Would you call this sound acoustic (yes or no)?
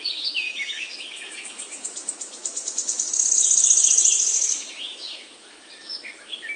no